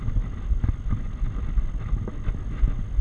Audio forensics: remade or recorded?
recorded